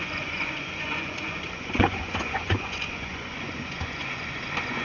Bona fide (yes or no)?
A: no